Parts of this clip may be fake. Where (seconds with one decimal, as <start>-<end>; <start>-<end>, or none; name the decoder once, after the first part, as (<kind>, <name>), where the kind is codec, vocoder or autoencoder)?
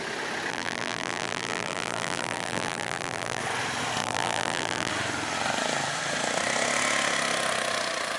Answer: 0.5-3.4 (vocoder, BigVGAN v2); 4.0-4.9